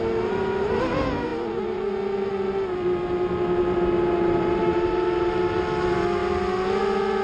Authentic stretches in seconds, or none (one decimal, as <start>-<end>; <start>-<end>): 0.0-4.6; 5.3-7.2